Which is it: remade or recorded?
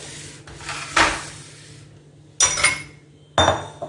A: recorded